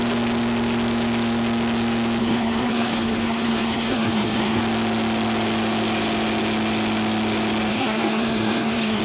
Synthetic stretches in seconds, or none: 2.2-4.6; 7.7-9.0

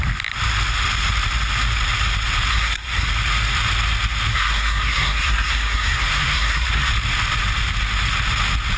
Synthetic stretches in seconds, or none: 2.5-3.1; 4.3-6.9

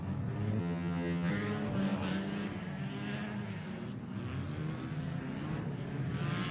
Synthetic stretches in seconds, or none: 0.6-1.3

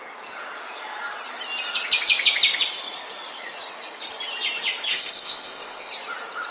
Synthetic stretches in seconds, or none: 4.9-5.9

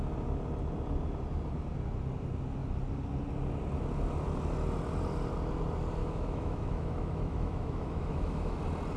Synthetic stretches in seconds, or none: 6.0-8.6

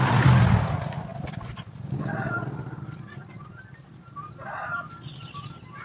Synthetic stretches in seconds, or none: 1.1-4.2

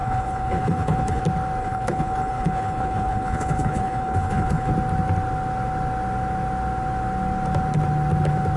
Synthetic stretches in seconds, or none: 0.0-1.2; 1.6-4.7